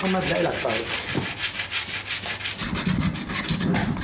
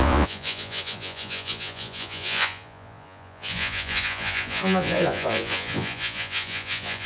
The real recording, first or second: first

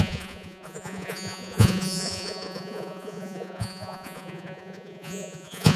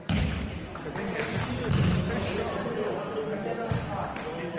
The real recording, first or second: second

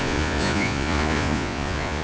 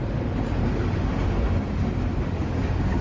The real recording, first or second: second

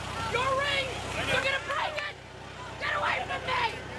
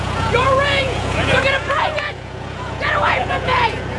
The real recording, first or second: first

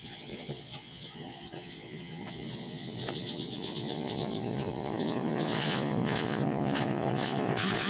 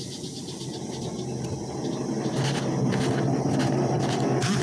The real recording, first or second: second